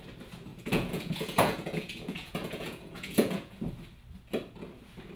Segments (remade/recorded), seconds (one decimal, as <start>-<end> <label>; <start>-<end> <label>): 0.0-0.5 recorded; 0.5-3.6 remade; 3.6-5.2 recorded